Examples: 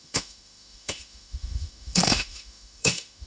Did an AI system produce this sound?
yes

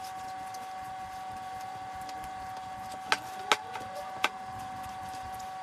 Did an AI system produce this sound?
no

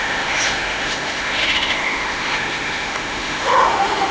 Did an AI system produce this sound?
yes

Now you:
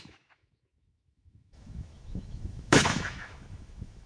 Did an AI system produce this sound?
yes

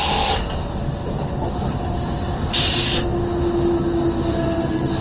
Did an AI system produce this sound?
no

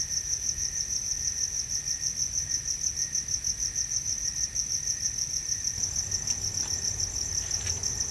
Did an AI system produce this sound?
no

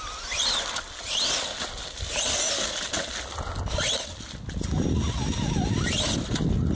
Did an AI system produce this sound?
no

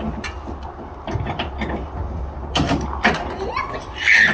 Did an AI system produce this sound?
no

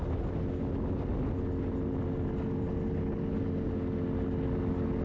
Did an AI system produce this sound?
no